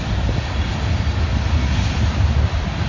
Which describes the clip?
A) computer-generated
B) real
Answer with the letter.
B